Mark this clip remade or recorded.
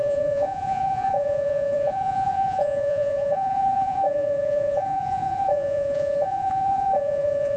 remade